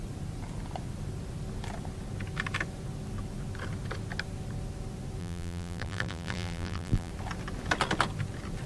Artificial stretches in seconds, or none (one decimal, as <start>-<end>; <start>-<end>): 5.2-7.1